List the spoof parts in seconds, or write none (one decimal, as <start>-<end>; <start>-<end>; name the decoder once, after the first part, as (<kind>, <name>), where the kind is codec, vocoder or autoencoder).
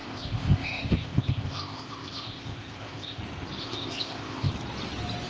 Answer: 0.0-3.2 (codec, ZipCodec); 3.6-4.5